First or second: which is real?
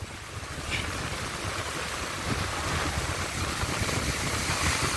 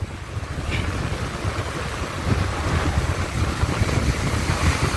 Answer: second